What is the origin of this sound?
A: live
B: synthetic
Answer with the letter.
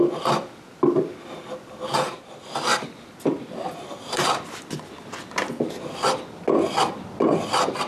A